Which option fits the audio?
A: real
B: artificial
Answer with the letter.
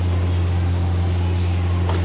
A